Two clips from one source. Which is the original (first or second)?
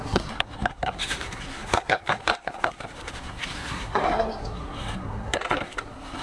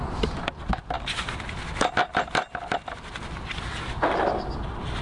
second